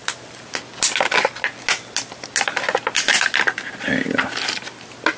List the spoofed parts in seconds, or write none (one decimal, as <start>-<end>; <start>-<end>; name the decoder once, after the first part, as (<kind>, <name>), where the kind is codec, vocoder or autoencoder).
none